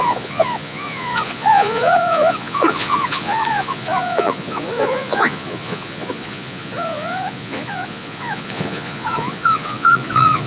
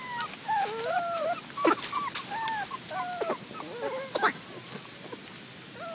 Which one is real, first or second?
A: second